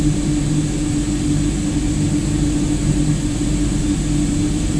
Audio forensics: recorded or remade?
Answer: recorded